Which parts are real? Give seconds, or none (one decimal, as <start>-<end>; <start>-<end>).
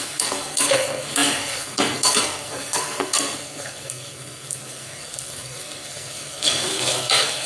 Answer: none